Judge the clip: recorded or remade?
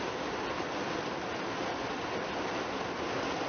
recorded